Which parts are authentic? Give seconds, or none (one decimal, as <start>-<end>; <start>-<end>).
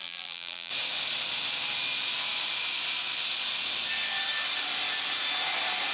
0.7-5.9